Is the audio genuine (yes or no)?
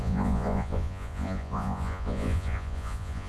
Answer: no